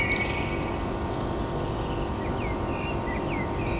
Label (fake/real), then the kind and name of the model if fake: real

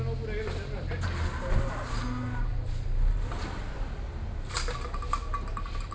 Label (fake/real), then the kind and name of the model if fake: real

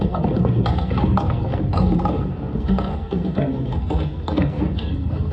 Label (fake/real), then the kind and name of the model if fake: fake, codec, SNAC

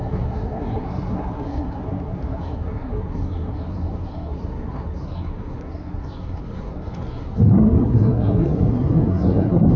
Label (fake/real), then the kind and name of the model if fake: fake, codec, SNAC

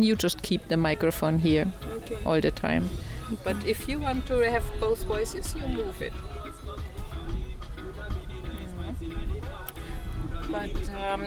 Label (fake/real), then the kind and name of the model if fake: real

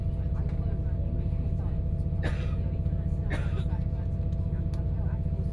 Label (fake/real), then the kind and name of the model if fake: real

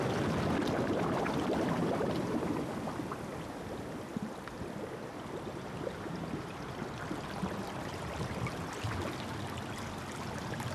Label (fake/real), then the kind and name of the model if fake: real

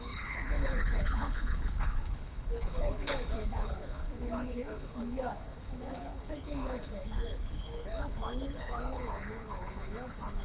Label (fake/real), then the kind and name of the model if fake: fake, codec, HILCodec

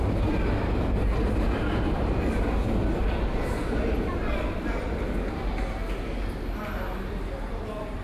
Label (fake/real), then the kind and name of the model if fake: real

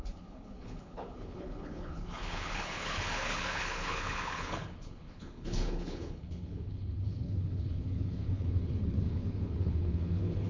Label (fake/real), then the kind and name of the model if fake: fake, codec, HILCodec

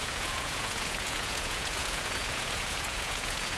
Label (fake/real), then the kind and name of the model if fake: fake, vocoder, Vocos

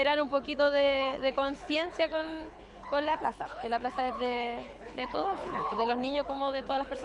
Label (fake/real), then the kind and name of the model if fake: fake, codec, HILCodec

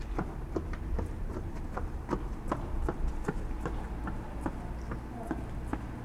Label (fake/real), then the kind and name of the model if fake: real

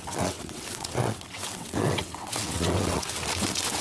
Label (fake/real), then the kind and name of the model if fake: fake, vocoder, WaveNeXt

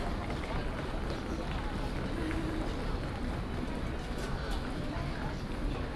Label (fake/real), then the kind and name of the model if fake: real